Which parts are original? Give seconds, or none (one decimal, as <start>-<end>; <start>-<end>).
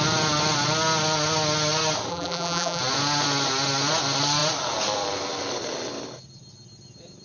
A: 0.0-2.1; 2.8-7.2